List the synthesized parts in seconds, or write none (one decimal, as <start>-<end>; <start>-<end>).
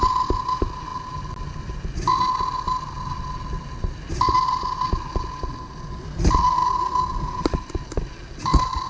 none